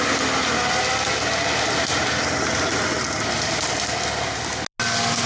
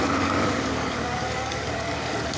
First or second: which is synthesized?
second